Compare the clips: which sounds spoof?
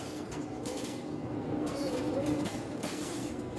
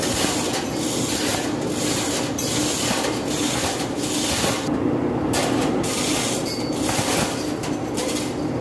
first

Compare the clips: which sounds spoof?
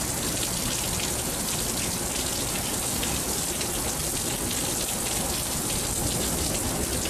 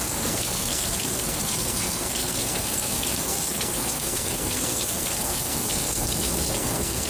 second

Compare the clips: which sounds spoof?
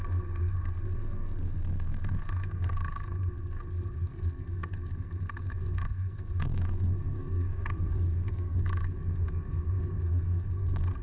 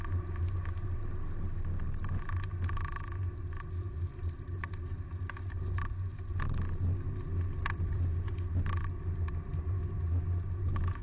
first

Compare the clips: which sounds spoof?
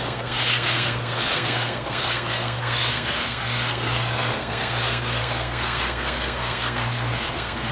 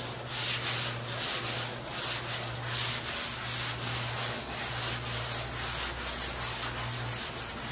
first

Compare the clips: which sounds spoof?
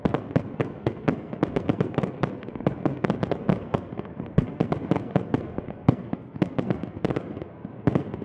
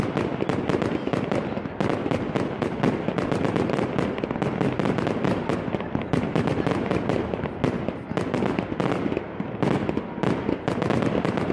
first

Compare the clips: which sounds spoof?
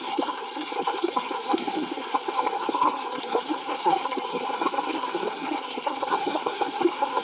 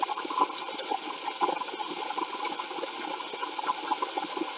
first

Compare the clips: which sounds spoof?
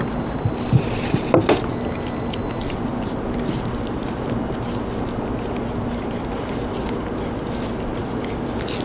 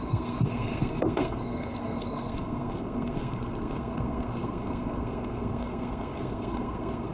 second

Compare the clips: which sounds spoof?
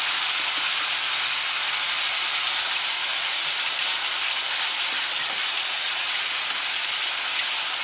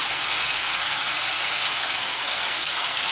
second